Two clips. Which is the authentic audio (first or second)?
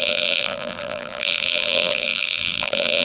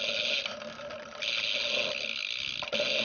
second